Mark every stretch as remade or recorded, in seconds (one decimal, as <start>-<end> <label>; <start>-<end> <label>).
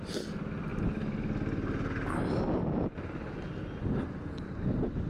0.0-5.1 recorded